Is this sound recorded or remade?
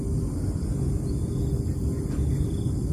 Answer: recorded